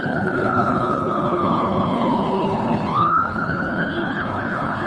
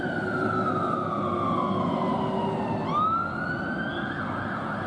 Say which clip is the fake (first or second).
first